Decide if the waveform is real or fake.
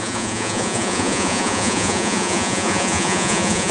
fake